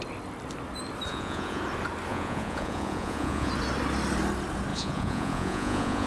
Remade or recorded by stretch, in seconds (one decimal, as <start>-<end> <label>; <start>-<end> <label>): 0.0-1.1 recorded; 1.1-1.6 remade; 1.6-2.1 recorded; 2.1-3.5 remade; 3.5-4.7 recorded; 4.7-6.1 remade